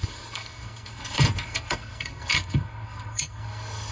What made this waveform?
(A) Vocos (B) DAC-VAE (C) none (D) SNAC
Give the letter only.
D